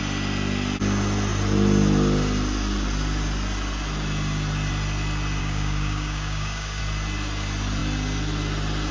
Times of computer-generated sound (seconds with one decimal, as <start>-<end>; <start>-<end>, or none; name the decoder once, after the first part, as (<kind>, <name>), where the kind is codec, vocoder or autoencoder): 5.4-6.8 (codec, DAC)